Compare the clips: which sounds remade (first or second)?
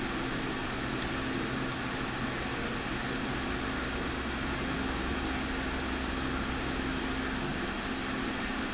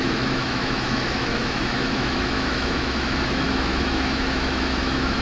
second